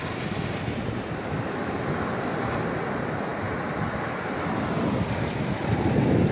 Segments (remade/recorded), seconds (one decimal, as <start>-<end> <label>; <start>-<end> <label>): 0.0-6.3 recorded